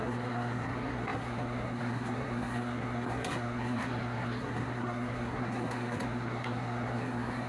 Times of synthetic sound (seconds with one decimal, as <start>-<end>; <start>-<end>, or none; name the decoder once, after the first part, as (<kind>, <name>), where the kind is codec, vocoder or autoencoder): 0.0-7.5 (codec, SNAC)

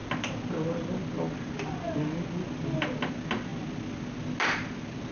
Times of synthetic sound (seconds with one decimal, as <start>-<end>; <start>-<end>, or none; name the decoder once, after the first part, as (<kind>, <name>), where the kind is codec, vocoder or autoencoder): none

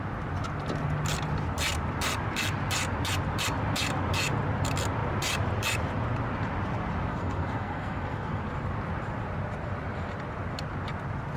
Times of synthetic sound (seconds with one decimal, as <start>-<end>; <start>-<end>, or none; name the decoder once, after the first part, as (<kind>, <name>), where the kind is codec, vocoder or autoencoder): 7.1-8.4 (codec, SNAC)

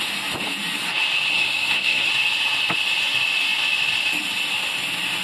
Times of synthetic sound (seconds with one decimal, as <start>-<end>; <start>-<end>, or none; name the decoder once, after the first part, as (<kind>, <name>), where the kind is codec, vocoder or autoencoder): 1.3-2.1 (codec, SNAC)

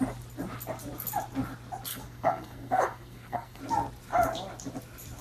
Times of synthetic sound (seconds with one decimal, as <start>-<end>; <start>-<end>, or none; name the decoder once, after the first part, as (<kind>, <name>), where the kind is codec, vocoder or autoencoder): 1.9-3.6 (codec, SNAC)

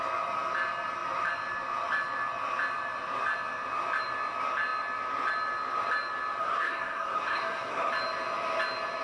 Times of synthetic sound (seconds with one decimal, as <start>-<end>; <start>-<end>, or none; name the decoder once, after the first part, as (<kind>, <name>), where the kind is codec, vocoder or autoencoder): 6.4-7.9 (codec, SNAC)

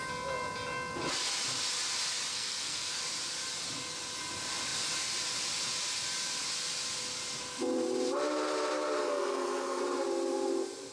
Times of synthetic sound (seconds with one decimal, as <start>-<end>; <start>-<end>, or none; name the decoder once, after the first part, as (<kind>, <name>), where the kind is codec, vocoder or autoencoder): 2.3-3.0 (codec, SNAC); 9.0-9.8

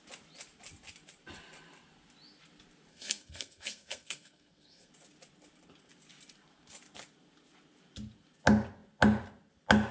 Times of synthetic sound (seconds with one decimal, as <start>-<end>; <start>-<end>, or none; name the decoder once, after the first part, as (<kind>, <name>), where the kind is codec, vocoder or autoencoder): 2.9-4.9 (codec, SNAC)